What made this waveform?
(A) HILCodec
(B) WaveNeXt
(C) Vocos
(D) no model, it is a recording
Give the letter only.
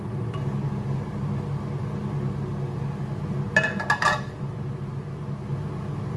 D